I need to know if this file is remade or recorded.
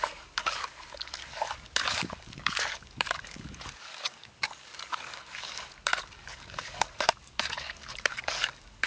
remade